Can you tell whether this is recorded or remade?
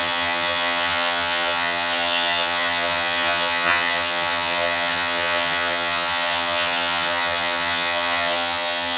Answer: remade